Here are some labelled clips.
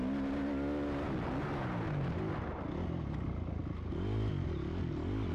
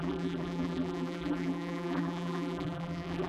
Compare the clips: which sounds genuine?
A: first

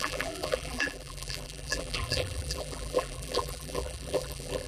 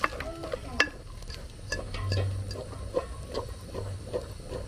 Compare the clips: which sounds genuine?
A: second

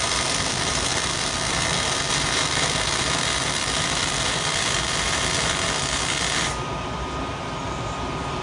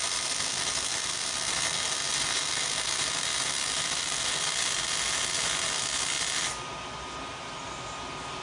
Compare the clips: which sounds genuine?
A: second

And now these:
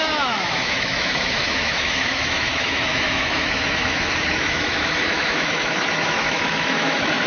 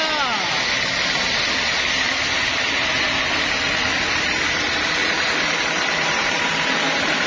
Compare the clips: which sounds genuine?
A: second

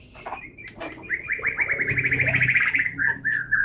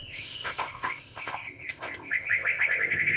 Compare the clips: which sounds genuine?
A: first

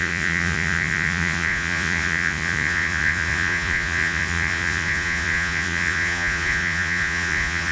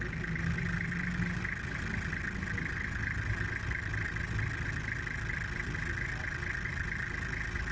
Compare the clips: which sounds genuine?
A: second